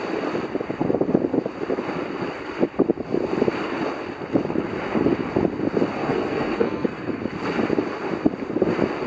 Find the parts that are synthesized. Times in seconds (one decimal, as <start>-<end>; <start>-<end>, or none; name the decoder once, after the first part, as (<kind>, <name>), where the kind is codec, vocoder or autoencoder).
6.0-7.2 (codec, SNAC)